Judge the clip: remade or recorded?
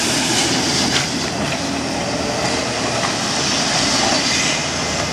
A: recorded